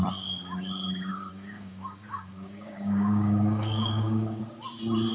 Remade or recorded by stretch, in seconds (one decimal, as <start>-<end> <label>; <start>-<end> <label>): 0.0-1.3 recorded; 1.3-4.4 remade; 4.4-5.1 recorded